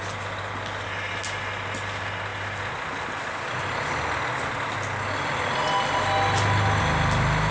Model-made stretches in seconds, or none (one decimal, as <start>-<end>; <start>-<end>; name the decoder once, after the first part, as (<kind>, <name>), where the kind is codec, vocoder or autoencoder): none